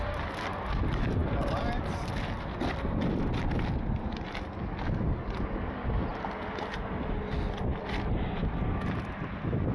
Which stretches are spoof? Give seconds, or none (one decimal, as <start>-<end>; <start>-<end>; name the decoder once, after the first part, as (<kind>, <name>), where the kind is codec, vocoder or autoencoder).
none